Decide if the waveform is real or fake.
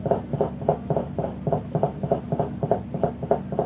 fake